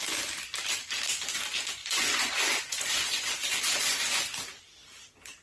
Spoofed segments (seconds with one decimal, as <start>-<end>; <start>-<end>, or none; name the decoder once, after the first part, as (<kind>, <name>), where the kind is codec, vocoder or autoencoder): 1.8-4.2 (vocoder, Vocos)